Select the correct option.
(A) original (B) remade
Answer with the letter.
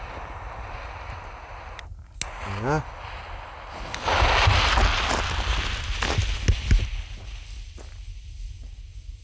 A